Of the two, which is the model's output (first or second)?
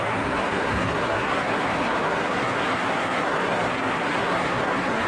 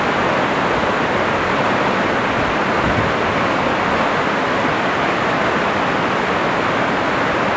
first